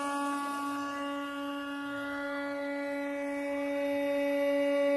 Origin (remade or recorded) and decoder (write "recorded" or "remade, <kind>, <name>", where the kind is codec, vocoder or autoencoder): recorded